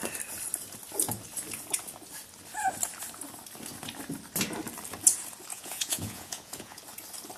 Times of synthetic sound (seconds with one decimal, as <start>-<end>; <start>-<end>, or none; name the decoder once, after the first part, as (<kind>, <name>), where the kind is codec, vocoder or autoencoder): 5.5-6.8 (vocoder, Vocos)